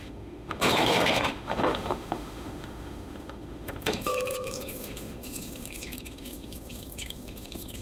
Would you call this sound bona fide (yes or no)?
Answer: no